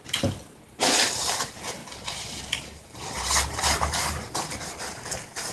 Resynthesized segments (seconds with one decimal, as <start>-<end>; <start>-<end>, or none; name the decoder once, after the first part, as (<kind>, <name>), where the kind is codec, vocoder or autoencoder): none